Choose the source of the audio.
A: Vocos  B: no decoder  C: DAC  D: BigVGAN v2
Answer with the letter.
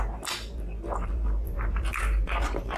D